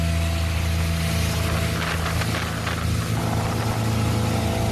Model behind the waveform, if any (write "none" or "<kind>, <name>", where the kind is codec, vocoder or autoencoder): none